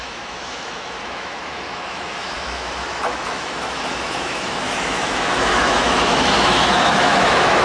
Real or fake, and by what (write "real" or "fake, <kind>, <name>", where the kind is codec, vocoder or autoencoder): fake, autoencoder, DAC-VAE